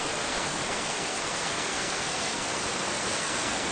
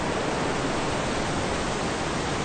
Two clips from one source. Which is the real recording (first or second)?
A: second